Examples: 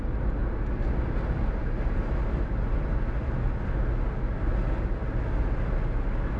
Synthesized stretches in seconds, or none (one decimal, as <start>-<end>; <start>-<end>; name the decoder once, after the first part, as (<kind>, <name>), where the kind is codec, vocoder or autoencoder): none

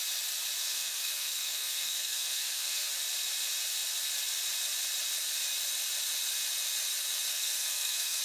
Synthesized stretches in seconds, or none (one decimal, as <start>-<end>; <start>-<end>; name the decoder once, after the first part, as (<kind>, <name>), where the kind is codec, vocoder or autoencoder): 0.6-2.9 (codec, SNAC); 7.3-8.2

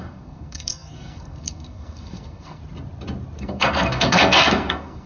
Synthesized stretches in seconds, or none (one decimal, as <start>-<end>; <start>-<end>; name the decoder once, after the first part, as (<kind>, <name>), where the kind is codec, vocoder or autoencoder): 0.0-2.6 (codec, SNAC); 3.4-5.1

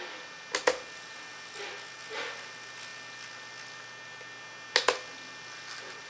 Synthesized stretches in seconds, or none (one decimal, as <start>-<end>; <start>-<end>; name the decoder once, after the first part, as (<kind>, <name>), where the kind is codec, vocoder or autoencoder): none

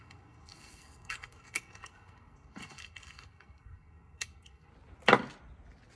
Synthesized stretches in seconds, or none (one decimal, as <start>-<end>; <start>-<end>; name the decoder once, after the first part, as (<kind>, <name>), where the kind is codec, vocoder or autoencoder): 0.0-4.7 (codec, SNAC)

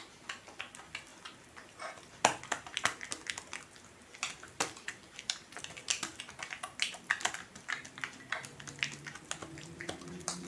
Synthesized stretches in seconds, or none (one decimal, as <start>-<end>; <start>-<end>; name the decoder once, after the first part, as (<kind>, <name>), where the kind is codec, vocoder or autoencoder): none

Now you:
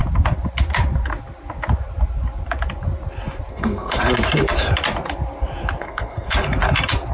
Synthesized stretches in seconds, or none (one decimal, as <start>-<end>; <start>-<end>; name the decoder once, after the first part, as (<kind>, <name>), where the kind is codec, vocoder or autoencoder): 3.5-4.0 (codec, SNAC); 5.8-6.3

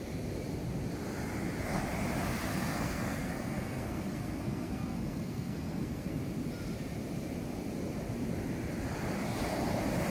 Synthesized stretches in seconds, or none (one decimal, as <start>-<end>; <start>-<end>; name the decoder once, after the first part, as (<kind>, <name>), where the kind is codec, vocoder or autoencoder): 2.5-6.2 (codec, SNAC)